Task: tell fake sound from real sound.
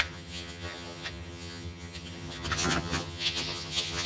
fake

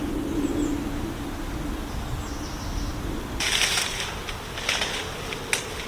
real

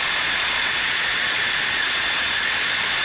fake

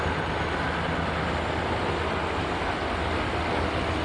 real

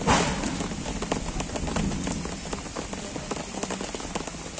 real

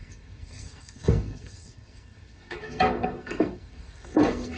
fake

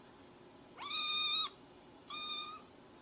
real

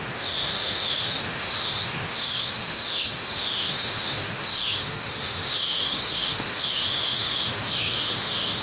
fake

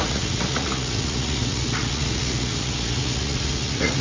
fake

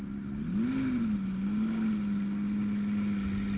real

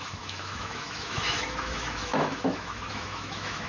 fake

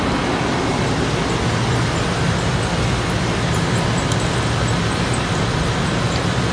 real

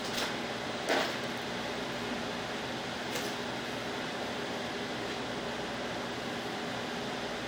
real